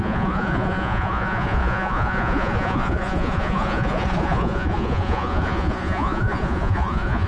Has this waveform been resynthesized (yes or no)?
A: yes